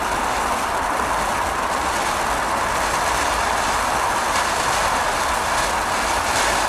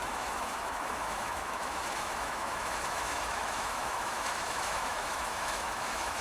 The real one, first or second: first